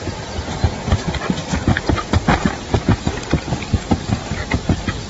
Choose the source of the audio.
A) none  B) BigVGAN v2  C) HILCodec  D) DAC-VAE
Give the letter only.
A